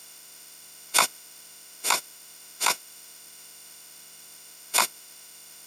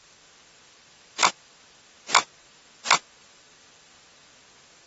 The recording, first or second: second